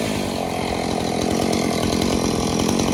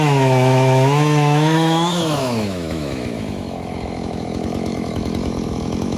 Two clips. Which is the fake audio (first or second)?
second